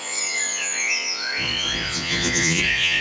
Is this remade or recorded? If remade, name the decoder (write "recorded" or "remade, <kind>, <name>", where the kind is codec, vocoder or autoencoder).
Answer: remade, vocoder, Vocos